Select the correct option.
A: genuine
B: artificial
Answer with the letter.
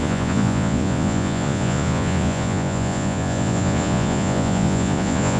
B